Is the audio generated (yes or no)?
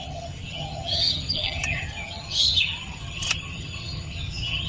yes